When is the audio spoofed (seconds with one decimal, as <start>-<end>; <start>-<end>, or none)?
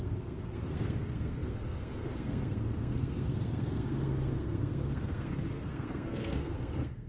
0.0-7.1